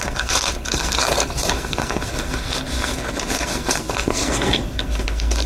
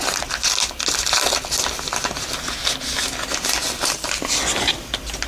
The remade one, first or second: first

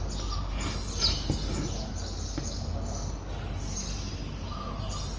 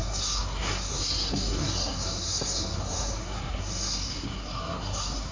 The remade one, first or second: second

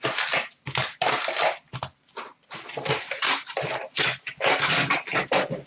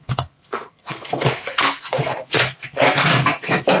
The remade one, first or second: second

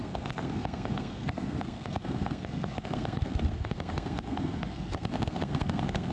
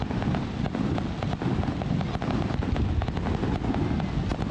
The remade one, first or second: first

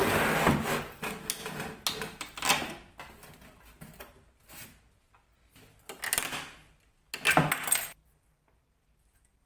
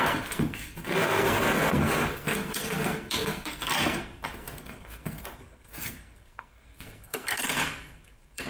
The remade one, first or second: second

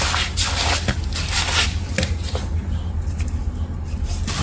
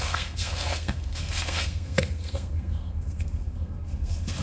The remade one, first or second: second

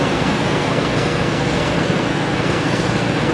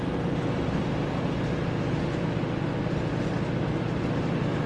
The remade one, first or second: first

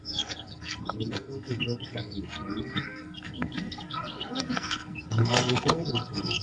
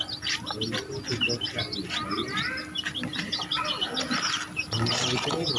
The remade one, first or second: first